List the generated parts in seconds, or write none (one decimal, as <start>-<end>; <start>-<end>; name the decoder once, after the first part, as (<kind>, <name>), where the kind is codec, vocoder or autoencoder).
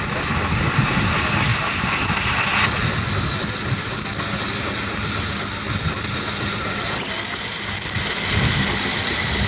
1.5-2.4 (vocoder, BigVGAN v2)